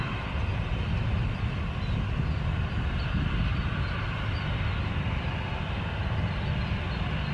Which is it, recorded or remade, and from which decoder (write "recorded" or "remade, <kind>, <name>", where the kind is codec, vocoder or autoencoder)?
recorded